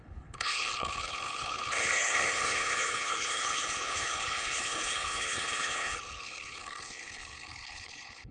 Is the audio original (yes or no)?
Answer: no